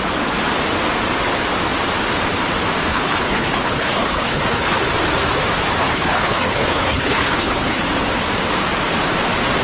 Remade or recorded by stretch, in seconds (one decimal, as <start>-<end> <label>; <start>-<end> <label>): 0.0-2.9 recorded; 2.9-4.8 remade; 4.8-5.8 recorded; 5.8-7.8 remade; 7.8-9.6 recorded